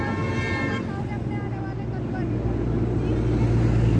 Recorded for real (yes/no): yes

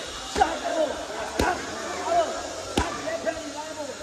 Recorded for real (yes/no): yes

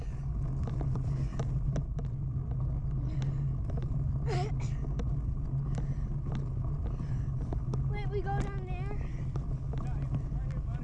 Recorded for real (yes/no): yes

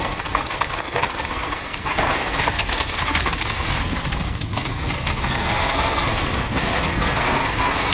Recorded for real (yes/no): no